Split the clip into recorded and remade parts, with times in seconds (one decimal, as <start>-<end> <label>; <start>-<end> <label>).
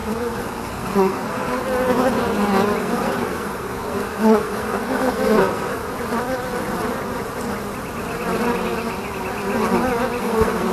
0.0-1.6 remade; 1.6-2.8 recorded; 2.8-5.8 remade; 5.8-10.2 recorded; 10.2-10.7 remade